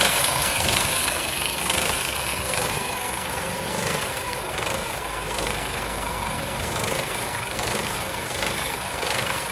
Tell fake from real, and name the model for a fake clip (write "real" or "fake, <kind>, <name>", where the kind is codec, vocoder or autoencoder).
fake, codec, SNAC